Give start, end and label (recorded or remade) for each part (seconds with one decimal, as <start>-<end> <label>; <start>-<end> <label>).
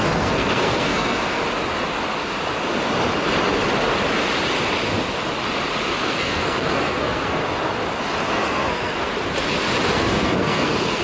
0.0-1.4 remade; 1.4-6.0 recorded; 6.0-7.4 remade; 7.4-8.3 recorded; 8.3-9.1 remade; 9.1-9.9 recorded; 9.9-11.0 remade